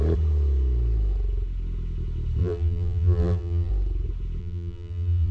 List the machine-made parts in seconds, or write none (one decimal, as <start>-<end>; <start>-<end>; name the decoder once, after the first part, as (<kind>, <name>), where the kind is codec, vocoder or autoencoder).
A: 2.4-3.7 (vocoder, BigVGAN v2); 4.4-5.3